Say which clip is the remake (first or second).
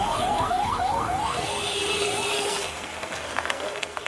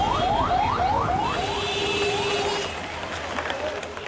first